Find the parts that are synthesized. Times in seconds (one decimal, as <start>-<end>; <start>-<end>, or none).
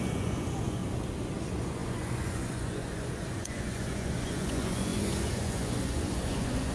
0.0-0.8; 1.4-6.7